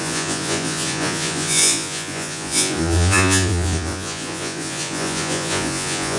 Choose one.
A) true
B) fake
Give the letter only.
B